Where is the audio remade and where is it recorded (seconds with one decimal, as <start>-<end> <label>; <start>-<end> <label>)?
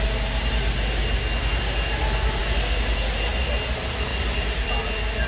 0.0-4.1 recorded; 4.1-4.7 remade; 4.7-5.3 recorded